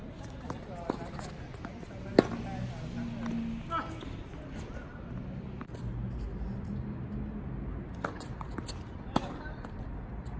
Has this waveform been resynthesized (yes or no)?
no